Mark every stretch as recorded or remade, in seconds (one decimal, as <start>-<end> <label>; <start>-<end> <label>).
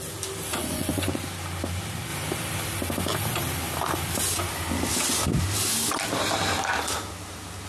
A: 0.0-0.6 recorded; 0.6-1.2 remade; 1.2-7.7 recorded